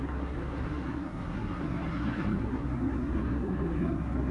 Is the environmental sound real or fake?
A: fake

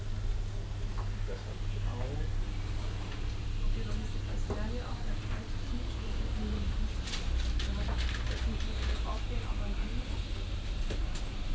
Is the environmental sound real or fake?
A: real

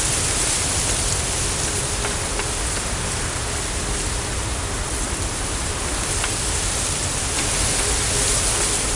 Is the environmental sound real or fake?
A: real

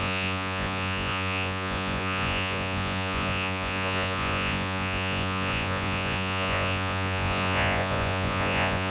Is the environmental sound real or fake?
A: fake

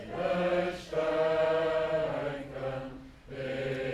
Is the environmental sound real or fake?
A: real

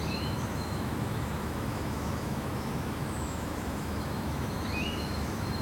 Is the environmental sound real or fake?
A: fake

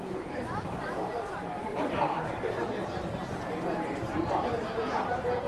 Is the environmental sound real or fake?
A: fake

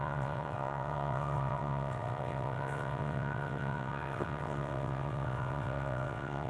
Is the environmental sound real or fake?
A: fake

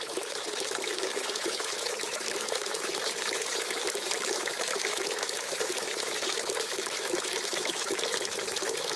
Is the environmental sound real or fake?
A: fake